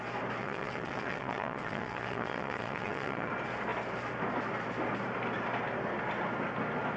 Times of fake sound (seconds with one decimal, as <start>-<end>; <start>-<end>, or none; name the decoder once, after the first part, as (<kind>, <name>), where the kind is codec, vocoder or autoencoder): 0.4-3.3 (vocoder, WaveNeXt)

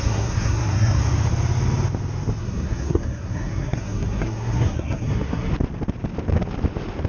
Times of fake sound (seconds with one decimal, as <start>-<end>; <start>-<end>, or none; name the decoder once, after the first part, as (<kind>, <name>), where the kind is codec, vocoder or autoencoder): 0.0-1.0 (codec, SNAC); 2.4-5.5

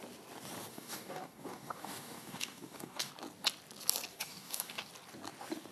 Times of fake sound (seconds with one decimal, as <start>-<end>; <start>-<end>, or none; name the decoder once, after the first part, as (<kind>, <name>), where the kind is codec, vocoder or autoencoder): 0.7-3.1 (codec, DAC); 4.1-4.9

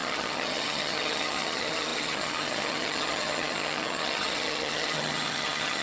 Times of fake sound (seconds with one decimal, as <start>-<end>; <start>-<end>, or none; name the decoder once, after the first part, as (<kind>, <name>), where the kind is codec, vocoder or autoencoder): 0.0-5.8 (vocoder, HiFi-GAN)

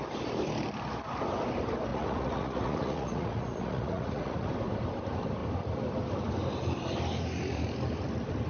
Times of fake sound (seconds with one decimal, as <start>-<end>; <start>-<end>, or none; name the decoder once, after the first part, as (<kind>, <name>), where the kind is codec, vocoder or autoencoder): 1.9-4.5 (vocoder, Vocos)

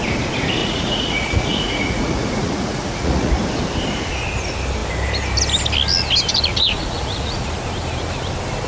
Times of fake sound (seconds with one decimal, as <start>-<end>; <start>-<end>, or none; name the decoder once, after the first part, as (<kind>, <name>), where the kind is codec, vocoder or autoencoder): 0.6-3.3 (vocoder, Vocos); 6.5-7.5